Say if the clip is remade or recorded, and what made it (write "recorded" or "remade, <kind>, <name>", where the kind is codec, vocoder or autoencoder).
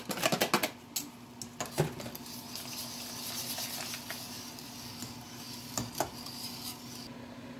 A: recorded